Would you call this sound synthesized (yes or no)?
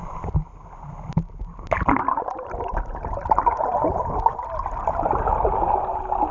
no